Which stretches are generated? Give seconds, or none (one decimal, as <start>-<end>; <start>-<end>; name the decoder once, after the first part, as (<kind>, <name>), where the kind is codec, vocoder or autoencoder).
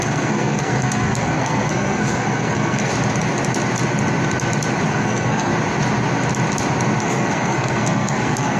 0.0-2.9 (codec, SNAC); 4.9-5.5; 7.0-8.6